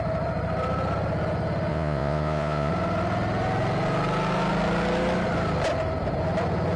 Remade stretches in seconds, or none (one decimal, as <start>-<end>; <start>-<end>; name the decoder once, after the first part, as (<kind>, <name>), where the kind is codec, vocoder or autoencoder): 1.7-2.7 (vocoder, Vocos)